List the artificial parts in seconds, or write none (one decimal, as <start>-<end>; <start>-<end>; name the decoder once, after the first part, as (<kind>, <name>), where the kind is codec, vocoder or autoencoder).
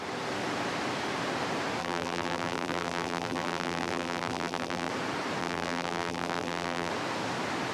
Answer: 1.8-4.9 (vocoder, BigVGAN v2); 5.4-6.9